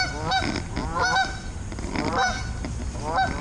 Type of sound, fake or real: real